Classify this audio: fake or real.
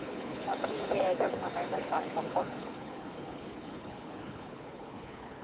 fake